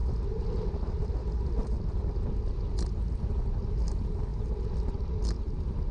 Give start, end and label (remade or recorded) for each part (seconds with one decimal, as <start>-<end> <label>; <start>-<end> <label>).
0.0-5.9 recorded